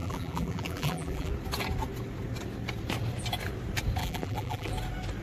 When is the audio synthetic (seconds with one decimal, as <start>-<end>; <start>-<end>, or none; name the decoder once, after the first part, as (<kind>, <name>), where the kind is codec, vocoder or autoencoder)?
0.0-1.3 (vocoder, BigVGAN v2); 4.0-4.7